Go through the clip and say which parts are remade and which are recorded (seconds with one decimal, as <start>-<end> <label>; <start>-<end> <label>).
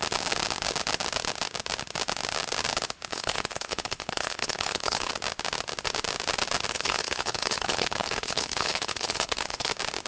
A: 0.0-3.1 recorded; 3.1-5.1 remade; 5.1-6.7 recorded; 6.7-9.7 remade; 9.7-10.1 recorded